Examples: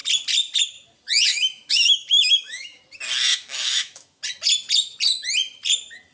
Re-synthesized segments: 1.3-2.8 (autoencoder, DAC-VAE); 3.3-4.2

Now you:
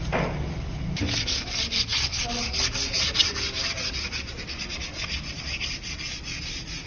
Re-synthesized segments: none

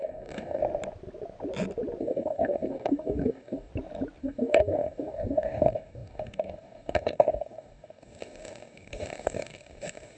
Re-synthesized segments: 0.0-0.6 (codec, DAC); 2.0-3.7; 4.2-10.2